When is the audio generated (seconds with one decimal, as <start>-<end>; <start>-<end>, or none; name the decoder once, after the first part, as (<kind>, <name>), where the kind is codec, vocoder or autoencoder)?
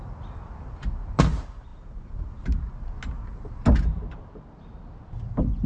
none